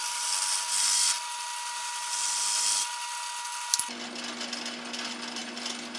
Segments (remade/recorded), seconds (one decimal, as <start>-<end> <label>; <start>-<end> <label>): 0.0-6.0 recorded